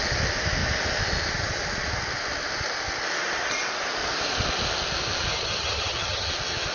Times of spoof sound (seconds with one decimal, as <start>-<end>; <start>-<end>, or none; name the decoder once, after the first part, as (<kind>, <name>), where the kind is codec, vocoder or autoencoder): 5.3-6.3 (vocoder, HiFi-GAN)